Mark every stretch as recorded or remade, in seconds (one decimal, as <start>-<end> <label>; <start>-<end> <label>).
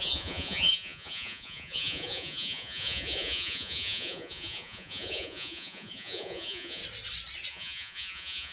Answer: 0.0-6.8 remade; 6.8-7.5 recorded; 7.5-8.5 remade